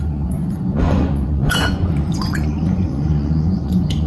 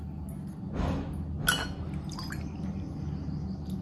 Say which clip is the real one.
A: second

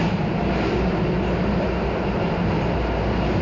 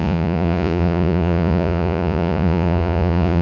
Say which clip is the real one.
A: first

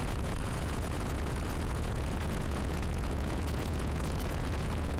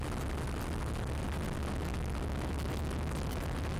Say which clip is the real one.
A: second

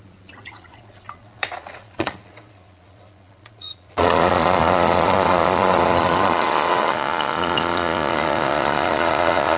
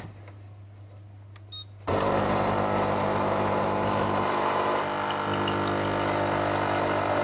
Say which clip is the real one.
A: second